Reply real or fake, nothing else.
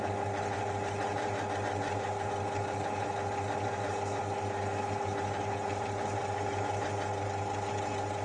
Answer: real